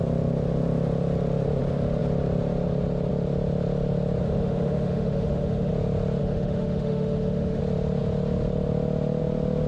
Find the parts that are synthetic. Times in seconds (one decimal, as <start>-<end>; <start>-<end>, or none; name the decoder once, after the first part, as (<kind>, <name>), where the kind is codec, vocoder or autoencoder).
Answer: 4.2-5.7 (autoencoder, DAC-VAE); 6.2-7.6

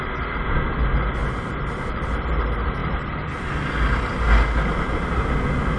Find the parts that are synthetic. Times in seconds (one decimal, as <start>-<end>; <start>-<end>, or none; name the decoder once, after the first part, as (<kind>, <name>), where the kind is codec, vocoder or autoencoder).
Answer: none

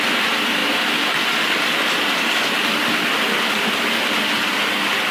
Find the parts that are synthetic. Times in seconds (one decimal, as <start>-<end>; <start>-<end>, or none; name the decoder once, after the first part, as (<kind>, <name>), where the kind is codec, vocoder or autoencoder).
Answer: none

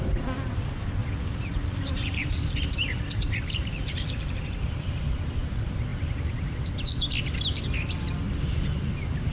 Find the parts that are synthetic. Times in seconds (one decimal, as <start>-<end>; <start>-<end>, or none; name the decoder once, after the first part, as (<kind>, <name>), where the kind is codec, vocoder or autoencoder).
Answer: 1.0-4.5 (vocoder, BigVGAN v2)